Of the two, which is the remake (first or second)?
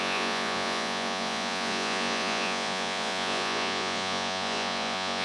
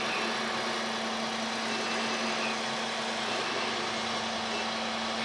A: first